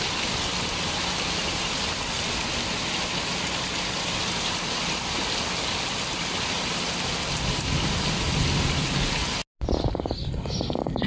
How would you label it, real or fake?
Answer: real